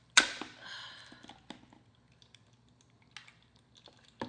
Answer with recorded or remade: recorded